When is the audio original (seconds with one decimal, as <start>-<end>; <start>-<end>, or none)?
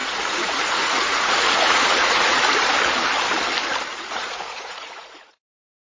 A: 2.4-3.9